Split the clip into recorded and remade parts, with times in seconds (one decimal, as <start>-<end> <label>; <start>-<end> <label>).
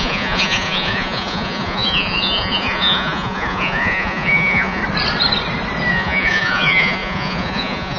0.0-4.8 remade; 4.8-5.9 recorded; 5.9-8.0 remade